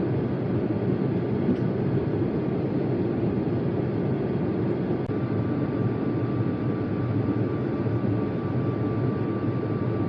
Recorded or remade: recorded